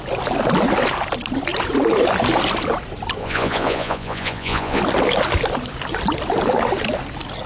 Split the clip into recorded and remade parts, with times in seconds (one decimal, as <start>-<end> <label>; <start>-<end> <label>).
0.0-3.2 recorded; 3.2-4.8 remade; 4.8-7.5 recorded